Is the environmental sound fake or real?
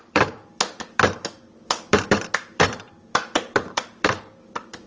fake